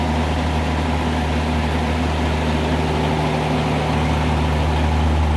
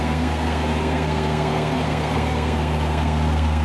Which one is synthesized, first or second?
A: second